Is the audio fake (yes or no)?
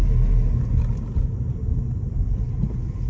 no